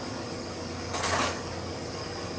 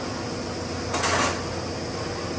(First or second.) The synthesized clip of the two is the first